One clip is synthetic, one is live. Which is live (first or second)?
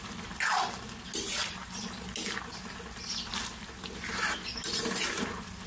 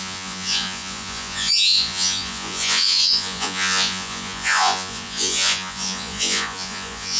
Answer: first